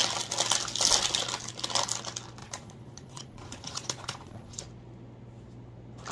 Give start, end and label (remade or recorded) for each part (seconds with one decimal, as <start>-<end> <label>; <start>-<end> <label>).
0.0-2.4 recorded; 2.4-4.6 remade; 4.6-6.1 recorded